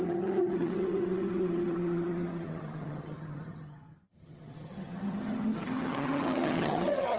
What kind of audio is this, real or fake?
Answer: fake